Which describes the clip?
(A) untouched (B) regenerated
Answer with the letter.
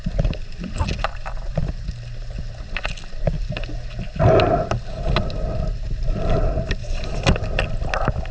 A